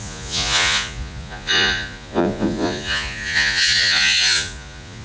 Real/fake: fake